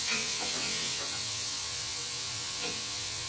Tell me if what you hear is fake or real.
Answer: fake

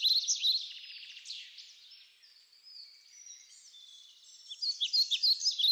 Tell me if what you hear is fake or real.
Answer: real